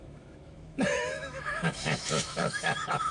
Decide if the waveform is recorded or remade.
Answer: remade